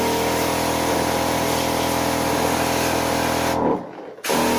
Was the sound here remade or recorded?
recorded